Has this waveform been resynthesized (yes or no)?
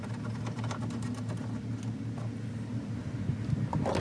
no